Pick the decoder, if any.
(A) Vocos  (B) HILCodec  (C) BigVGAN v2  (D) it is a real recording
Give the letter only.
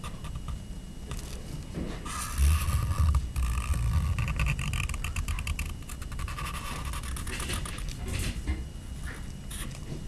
D